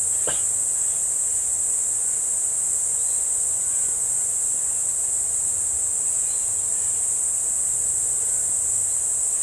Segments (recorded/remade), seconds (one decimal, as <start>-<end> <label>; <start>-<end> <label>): 0.0-2.9 recorded; 2.9-5.1 remade; 5.1-9.4 recorded